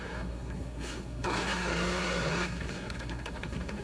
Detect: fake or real fake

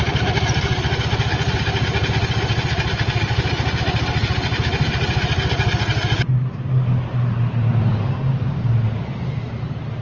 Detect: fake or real real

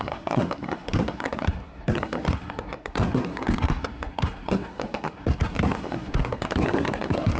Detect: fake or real fake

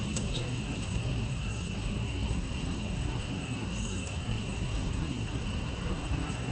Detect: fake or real fake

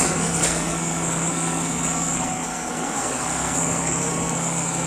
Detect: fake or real fake